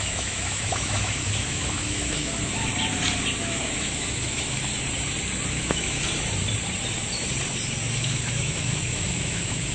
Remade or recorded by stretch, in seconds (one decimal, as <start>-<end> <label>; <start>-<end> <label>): 0.0-2.7 remade; 2.7-3.4 recorded; 3.4-4.7 remade; 4.7-5.5 recorded; 5.5-6.0 remade; 6.0-7.9 recorded; 7.9-9.7 remade